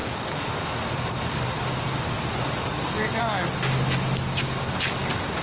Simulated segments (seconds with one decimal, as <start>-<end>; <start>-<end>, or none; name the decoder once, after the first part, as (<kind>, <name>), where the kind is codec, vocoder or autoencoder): none